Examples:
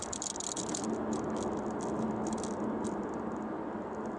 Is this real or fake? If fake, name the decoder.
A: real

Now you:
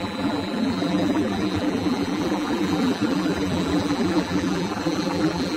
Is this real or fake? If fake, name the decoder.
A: fake, vocoder, BigVGAN v2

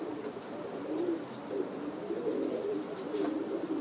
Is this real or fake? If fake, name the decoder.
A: real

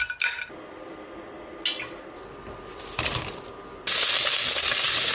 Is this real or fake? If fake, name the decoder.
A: real